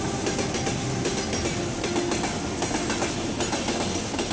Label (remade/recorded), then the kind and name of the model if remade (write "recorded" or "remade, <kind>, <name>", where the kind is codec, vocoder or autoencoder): recorded